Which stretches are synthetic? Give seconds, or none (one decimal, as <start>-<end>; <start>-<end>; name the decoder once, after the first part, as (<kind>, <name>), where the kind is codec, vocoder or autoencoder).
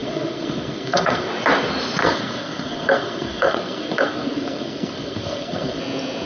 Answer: 0.0-1.3 (codec, SNAC); 2.0-5.8